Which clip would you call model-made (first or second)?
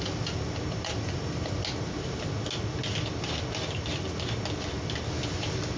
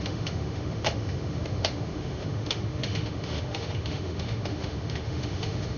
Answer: second